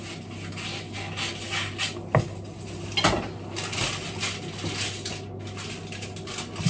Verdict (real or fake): real